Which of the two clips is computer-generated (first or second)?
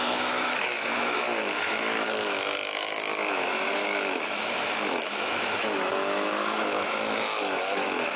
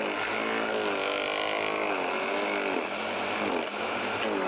first